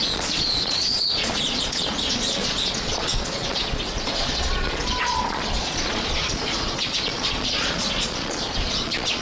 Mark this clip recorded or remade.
remade